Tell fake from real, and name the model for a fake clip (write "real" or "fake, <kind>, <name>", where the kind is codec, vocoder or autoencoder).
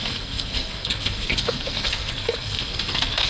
fake, codec, SNAC